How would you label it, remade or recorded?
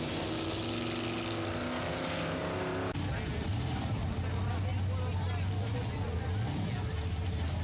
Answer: recorded